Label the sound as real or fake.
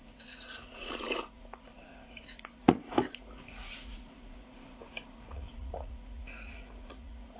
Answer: fake